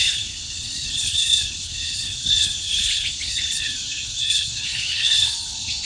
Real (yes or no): no